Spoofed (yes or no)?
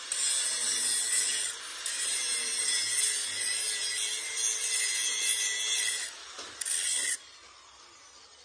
no